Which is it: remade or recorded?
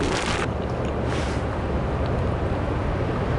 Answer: recorded